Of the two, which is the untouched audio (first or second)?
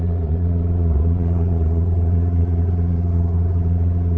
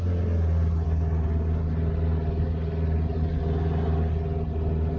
second